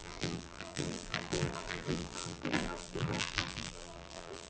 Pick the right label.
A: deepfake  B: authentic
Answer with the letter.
A